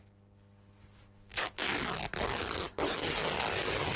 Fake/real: real